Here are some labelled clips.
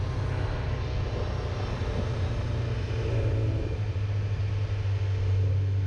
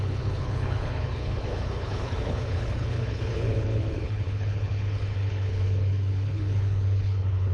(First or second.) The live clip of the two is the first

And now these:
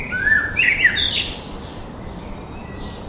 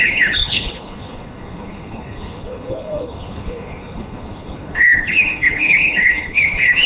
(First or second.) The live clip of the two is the first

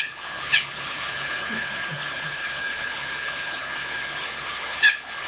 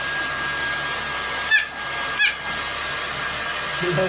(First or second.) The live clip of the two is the second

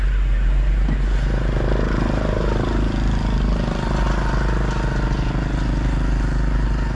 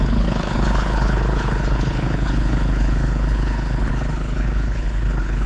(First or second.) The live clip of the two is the first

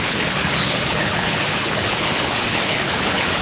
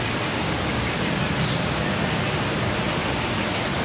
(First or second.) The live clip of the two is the second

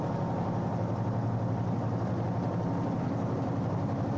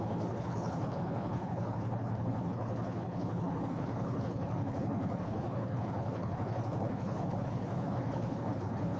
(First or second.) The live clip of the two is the first